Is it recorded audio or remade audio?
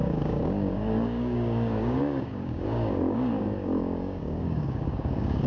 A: remade